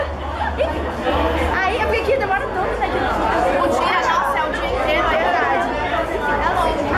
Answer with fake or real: real